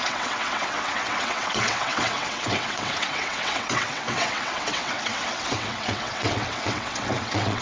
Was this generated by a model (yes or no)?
yes